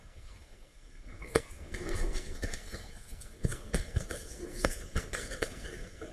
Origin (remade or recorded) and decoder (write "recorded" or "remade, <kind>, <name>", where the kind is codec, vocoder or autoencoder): remade, codec, SNAC